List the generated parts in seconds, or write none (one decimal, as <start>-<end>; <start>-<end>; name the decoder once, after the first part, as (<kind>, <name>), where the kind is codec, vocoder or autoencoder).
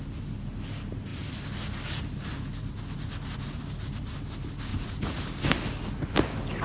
4.7-5.2 (vocoder, Vocos)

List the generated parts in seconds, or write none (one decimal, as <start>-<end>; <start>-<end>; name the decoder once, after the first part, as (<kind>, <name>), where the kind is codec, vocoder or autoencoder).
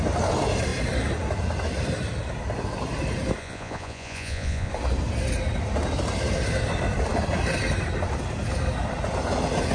3.4-4.7 (vocoder, Vocos)